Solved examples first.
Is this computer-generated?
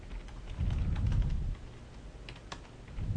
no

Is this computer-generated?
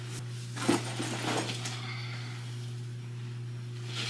no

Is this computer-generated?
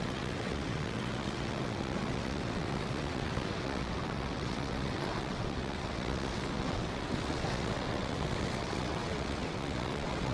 yes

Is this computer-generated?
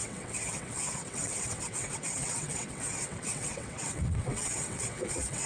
yes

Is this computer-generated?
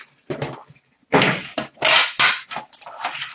no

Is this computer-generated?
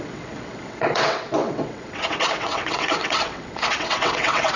yes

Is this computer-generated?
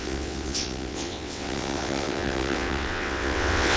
yes